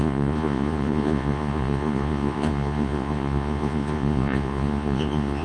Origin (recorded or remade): remade